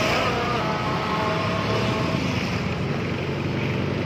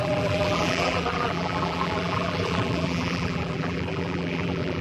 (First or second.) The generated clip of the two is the second